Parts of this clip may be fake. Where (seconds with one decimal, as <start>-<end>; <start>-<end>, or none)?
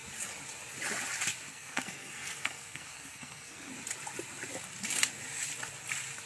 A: 1.5-3.7